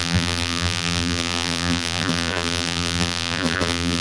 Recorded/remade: remade